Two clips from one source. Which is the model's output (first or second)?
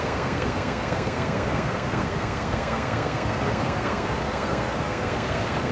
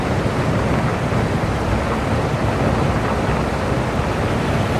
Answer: first